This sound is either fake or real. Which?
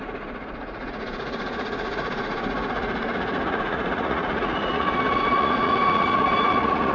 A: fake